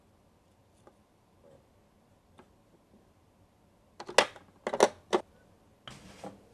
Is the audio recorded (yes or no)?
yes